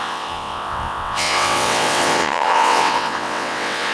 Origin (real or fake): fake